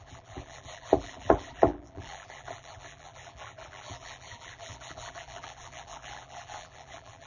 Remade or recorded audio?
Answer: remade